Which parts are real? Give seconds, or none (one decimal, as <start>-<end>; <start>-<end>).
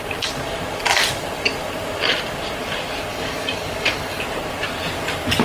0.0-3.1; 4.2-5.4